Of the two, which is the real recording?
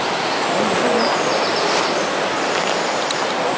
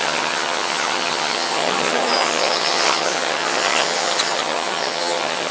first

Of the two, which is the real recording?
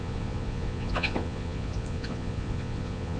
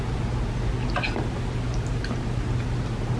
second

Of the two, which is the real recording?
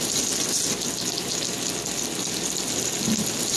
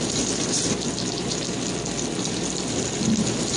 first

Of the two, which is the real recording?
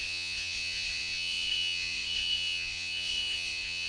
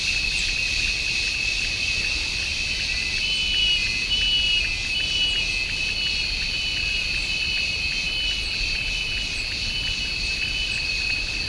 second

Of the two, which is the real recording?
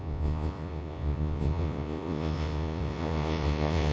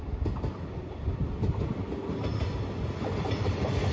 second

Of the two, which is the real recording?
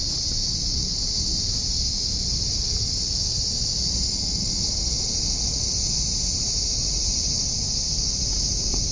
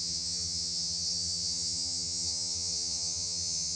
first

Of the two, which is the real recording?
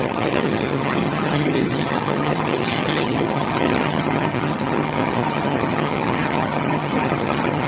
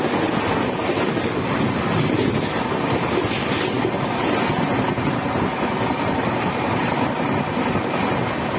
second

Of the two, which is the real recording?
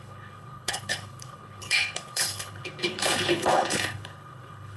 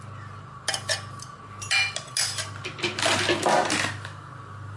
second